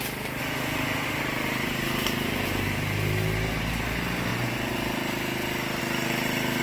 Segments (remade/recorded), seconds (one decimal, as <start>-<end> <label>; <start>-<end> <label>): 0.0-0.4 recorded; 0.4-1.2 remade; 1.2-6.6 recorded